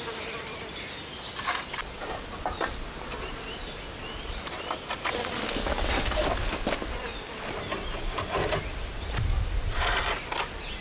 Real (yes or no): yes